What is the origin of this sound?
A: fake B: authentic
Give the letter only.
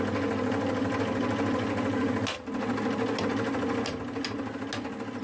B